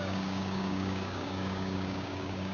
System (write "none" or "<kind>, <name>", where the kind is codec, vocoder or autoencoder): codec, DAC